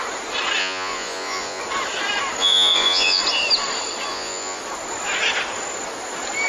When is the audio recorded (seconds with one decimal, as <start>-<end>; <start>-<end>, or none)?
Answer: 0.0-0.6; 1.6-2.4; 3.2-4.1; 4.6-6.5